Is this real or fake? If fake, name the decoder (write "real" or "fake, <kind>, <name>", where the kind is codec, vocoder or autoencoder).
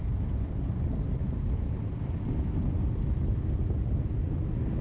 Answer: real